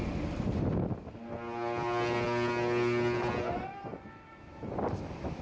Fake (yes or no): no